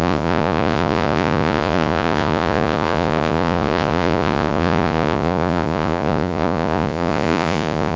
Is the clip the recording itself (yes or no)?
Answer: no